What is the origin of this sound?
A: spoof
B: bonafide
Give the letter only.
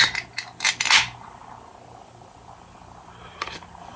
B